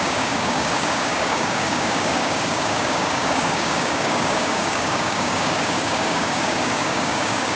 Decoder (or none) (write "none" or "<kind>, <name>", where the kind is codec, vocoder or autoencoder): codec, DAC